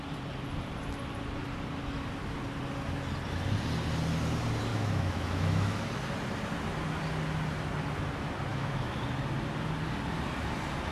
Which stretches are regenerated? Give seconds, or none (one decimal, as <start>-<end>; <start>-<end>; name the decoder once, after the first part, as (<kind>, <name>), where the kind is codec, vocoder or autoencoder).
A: 4.7-5.9 (autoencoder, DAC-VAE); 8.5-9.0